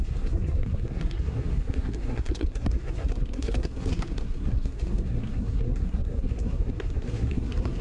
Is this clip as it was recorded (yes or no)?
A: no